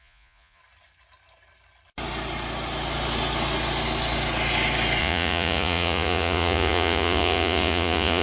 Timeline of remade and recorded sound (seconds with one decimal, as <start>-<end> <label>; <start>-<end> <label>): 0.0-0.6 remade; 0.6-5.0 recorded; 5.0-8.2 remade